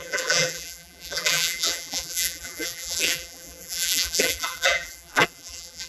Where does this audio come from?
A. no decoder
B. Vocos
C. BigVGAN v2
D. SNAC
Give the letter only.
C